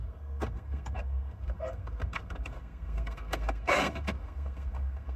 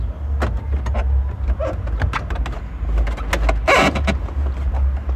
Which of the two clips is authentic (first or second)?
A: second